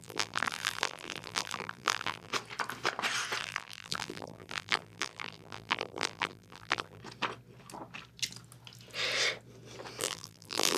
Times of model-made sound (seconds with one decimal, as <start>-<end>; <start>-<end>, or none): 0.0-2.3; 3.4-7.0; 10.0-10.8